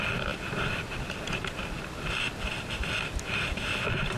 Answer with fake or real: real